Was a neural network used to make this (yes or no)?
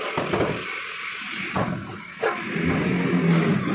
no